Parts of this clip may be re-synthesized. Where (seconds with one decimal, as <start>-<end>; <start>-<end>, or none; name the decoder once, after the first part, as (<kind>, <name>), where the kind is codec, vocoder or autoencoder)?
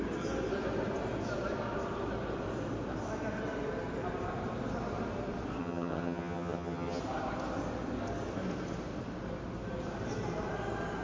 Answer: 5.6-7.0 (vocoder, HiFi-GAN)